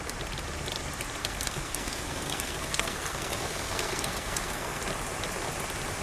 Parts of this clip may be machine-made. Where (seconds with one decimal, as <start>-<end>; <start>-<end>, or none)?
1.2-4.8